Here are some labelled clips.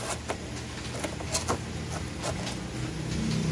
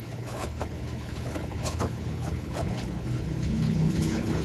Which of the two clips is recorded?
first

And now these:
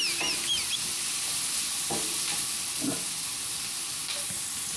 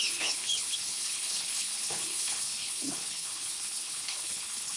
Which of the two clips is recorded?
first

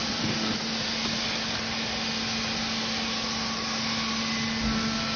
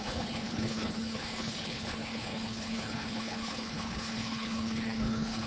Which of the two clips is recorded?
first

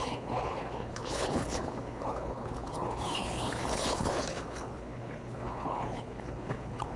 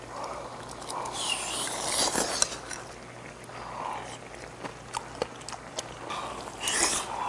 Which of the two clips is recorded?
second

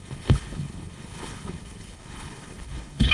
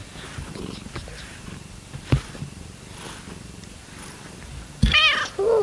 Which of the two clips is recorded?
second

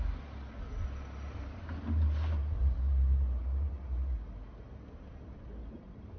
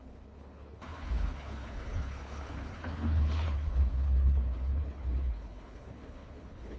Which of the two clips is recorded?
first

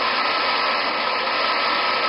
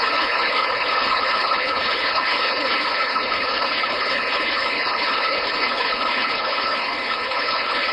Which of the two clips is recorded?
first